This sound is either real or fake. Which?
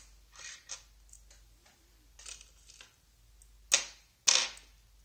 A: real